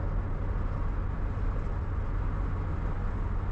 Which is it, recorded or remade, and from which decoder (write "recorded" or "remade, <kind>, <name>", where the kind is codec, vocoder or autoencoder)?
recorded